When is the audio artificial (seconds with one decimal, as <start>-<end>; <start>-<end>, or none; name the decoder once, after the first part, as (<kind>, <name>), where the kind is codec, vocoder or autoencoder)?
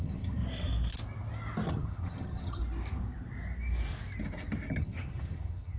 0.0-0.4 (vocoder, HiFi-GAN); 1.7-2.6; 4.7-5.8